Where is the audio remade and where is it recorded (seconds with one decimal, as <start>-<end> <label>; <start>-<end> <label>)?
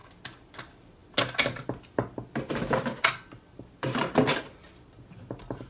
0.0-5.7 recorded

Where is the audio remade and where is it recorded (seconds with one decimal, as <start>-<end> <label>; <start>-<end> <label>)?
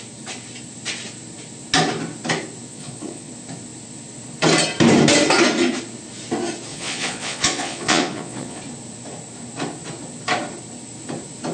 0.0-2.7 recorded; 2.7-3.3 remade; 3.3-6.7 recorded; 6.7-8.6 remade; 8.6-11.5 recorded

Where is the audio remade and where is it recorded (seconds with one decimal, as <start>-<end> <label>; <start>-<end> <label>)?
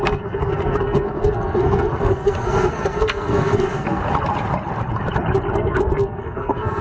0.0-4.0 remade; 4.0-5.5 recorded; 5.5-6.8 remade